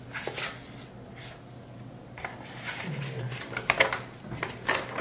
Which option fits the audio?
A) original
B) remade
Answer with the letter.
A